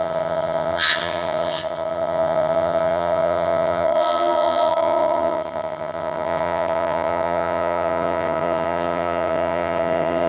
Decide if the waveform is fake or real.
fake